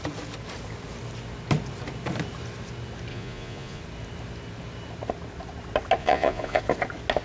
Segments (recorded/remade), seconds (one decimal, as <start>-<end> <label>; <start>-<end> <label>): 0.0-3.1 recorded; 3.1-3.8 remade; 3.8-6.0 recorded; 6.0-6.6 remade; 6.6-7.2 recorded